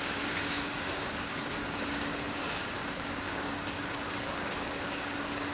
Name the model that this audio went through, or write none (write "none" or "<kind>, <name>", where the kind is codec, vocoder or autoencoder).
codec, DAC